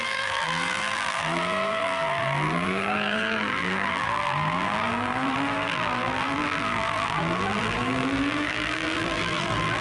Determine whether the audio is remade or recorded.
remade